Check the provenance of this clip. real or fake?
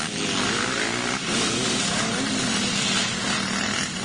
real